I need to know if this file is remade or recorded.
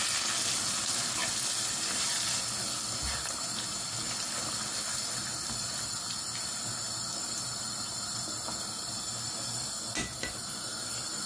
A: recorded